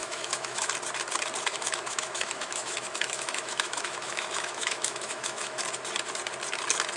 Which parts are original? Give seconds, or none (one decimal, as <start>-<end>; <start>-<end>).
0.7-1.5; 5.6-7.0